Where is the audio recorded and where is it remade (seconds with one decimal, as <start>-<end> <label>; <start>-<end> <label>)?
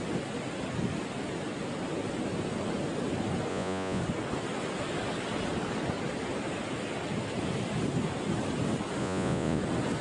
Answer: 0.0-3.5 recorded; 3.5-4.0 remade; 4.0-9.0 recorded; 9.0-9.6 remade; 9.6-10.0 recorded